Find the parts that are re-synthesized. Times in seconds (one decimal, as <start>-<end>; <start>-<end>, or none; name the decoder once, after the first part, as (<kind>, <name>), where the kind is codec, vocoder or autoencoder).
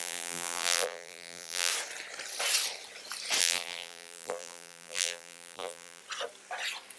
0.0-1.7 (vocoder, BigVGAN v2); 3.4-6.0